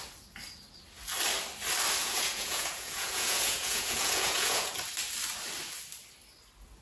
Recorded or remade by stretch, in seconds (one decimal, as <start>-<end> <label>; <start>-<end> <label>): 0.0-2.0 recorded; 2.0-4.7 remade; 4.7-6.8 recorded